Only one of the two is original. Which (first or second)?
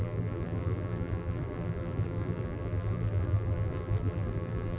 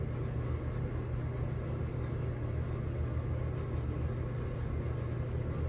second